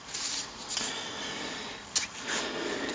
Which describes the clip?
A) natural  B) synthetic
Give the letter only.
A